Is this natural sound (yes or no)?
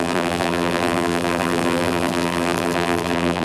no